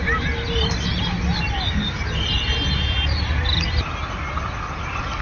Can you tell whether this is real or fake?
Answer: real